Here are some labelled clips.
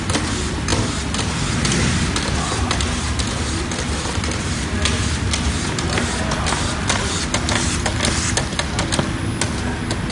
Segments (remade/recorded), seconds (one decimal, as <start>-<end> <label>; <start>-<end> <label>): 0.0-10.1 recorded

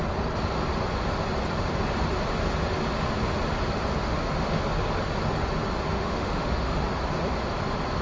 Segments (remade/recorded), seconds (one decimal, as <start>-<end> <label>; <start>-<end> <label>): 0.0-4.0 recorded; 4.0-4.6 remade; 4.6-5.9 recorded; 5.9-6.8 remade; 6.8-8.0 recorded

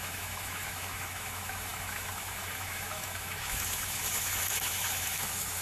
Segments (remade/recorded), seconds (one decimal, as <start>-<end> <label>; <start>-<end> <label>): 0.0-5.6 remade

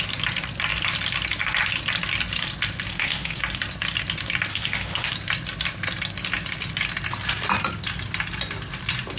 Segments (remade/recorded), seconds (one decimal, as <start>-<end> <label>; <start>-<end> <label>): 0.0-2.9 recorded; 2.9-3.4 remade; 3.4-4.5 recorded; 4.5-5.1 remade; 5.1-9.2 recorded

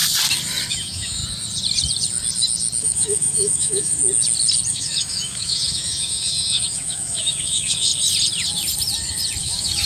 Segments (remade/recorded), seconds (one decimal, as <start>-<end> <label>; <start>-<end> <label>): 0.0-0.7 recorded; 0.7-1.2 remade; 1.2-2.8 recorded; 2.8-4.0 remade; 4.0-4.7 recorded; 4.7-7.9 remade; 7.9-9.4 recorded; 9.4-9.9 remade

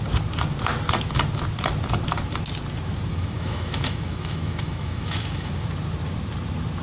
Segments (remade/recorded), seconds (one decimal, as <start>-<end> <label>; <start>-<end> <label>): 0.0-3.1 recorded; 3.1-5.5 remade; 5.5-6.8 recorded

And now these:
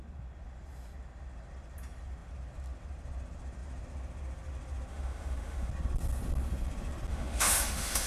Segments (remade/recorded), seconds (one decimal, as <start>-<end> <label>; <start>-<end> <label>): 0.0-4.9 recorded; 4.9-5.7 remade; 5.7-7.1 recorded; 7.1-8.1 remade

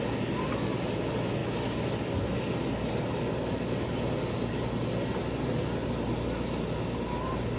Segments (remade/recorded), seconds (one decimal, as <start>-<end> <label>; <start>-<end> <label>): 0.0-7.6 recorded